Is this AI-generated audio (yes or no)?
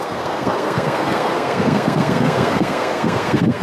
yes